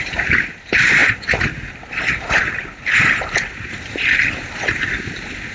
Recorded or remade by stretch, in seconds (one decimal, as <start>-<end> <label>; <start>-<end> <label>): 0.0-5.5 recorded